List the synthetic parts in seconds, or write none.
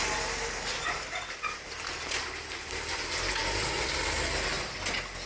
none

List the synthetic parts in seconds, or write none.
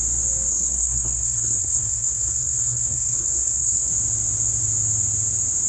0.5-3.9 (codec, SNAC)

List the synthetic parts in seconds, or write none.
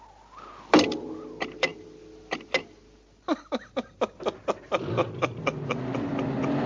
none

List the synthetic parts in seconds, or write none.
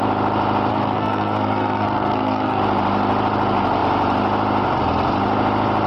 0.7-2.6 (codec, SNAC)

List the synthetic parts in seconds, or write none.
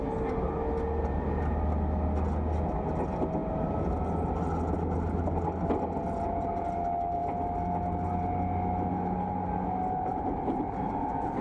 none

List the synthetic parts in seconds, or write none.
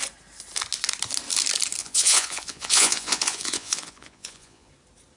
1.8-4.7 (vocoder, Vocos)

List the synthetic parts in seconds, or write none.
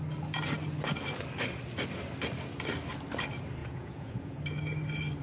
3.6-4.4 (vocoder, Vocos)